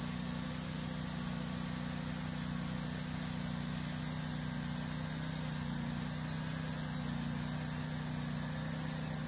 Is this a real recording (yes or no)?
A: yes